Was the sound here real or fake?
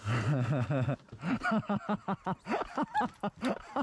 real